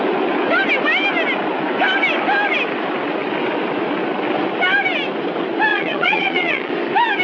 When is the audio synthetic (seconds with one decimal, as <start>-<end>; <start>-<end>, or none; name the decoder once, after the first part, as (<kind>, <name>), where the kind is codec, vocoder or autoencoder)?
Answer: 5.7-6.7 (vocoder, Vocos)